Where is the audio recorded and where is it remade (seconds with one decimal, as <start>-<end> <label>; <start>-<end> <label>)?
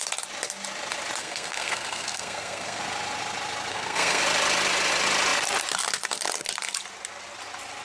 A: 0.0-1.2 recorded; 1.2-2.8 remade; 2.8-3.7 recorded; 3.7-4.2 remade; 4.2-7.8 recorded